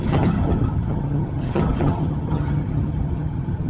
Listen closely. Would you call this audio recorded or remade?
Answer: remade